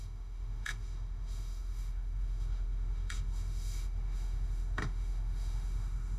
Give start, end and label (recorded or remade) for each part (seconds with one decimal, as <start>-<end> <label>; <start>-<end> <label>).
0.0-6.2 remade

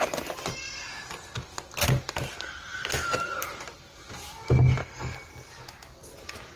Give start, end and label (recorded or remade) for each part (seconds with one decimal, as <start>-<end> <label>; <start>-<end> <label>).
0.0-4.8 recorded; 4.8-5.5 remade; 5.5-6.6 recorded

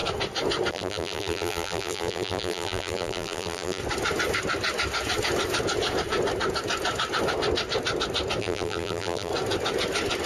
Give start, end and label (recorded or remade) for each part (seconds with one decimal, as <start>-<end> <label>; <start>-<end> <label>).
0.0-0.7 recorded; 0.7-3.8 remade; 3.8-8.4 recorded; 8.4-9.3 remade; 9.3-10.3 recorded